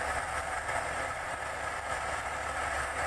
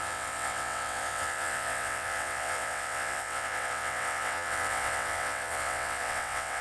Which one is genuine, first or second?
first